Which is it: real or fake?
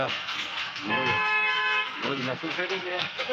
fake